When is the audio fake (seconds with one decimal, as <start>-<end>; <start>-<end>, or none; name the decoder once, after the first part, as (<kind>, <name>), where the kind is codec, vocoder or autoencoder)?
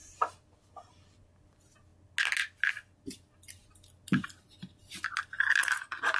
none